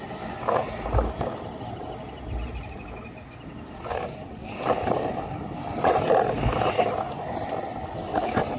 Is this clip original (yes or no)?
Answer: yes